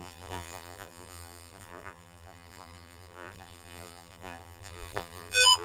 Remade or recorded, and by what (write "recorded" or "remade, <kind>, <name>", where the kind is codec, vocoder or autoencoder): remade, vocoder, BigVGAN v2